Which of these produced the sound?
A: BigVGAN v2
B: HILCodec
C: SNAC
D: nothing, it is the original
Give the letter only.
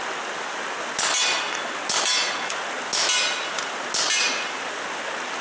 D